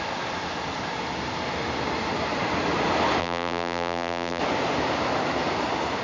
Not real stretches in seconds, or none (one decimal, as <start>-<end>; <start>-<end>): 3.2-4.4